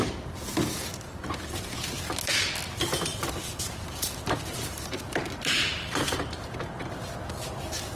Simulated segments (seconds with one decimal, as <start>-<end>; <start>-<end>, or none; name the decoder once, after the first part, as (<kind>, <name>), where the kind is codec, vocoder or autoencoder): 0.9-1.5 (vocoder, BigVGAN v2); 3.1-6.2